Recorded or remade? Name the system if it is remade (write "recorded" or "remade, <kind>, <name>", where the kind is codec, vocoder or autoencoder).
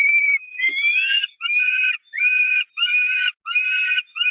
recorded